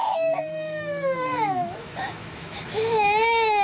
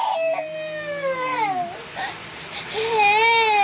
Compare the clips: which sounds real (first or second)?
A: second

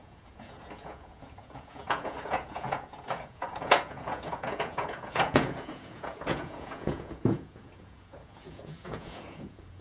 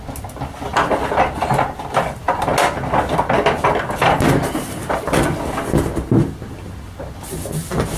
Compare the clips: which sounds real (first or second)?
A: second